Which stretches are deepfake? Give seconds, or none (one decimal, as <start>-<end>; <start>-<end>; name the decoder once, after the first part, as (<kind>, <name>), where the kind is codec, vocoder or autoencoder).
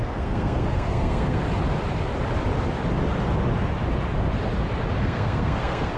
0.0-1.4 (codec, SNAC); 5.0-6.0